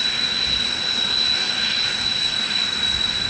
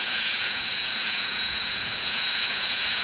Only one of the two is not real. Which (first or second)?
second